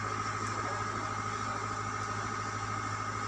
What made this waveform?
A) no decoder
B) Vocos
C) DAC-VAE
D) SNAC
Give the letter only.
A